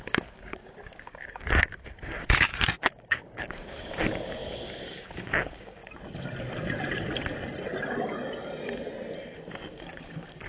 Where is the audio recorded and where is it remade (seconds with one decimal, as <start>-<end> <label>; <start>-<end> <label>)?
0.0-5.8 remade; 5.8-9.7 recorded; 9.7-10.5 remade